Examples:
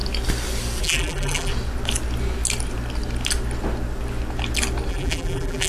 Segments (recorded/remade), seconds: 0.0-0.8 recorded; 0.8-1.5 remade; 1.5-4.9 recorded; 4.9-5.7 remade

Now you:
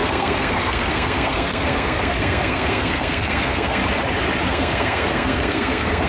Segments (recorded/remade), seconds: 0.0-3.8 remade; 3.8-4.5 recorded; 4.5-6.1 remade

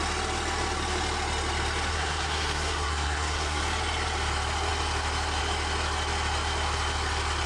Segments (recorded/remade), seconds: 0.0-1.9 recorded; 1.9-3.6 remade; 3.6-7.5 recorded